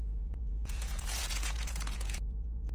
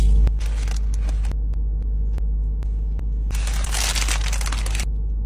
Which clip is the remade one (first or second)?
first